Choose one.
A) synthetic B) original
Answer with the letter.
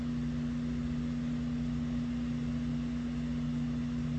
B